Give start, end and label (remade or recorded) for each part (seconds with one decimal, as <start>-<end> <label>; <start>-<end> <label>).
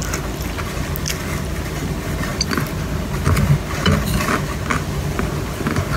0.0-6.0 recorded